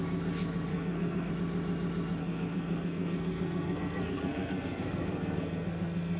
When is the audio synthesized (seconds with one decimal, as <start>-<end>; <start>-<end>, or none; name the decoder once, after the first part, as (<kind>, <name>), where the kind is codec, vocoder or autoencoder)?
0.7-1.3 (codec, SNAC); 2.2-6.2